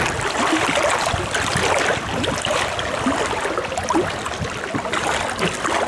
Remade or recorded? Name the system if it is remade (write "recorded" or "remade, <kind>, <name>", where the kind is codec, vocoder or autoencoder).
recorded